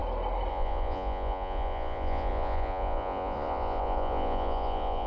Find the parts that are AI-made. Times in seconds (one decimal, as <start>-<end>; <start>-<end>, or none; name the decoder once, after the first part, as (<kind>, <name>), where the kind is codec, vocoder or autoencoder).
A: 0.5-5.1 (vocoder, Vocos)